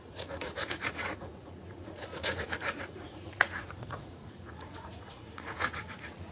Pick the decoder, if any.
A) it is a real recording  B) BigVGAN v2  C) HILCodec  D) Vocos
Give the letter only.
D